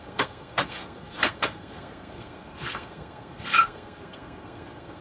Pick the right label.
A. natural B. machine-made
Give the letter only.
B